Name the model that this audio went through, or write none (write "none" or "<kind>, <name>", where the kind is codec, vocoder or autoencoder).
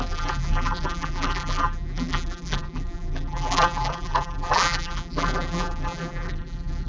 vocoder, BigVGAN v2